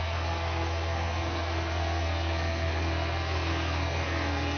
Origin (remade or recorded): remade